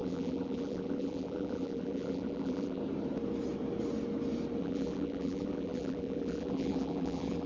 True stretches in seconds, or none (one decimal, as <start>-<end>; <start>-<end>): 2.8-4.6